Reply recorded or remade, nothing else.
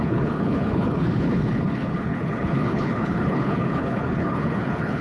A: remade